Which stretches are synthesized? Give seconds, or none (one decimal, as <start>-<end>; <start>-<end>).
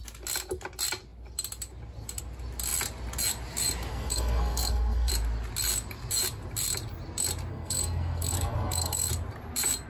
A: 3.9-5.1; 7.5-9.1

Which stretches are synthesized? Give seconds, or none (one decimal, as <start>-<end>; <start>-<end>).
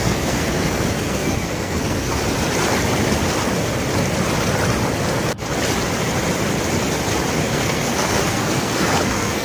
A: 0.0-2.2; 7.4-9.4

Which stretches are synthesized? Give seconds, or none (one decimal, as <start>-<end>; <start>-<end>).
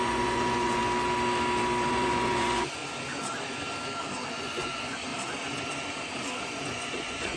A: 0.0-0.8; 1.9-2.8; 4.3-5.1; 6.6-7.4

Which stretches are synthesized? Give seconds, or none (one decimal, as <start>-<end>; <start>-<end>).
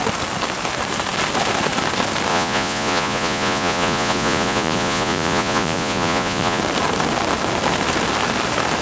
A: 2.3-6.6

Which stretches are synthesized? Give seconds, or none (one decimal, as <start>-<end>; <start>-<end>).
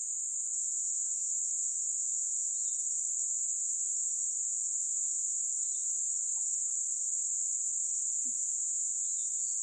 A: 0.0-2.5; 3.2-3.8; 4.8-5.4; 8.6-9.6